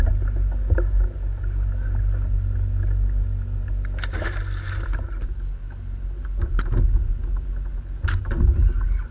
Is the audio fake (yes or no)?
no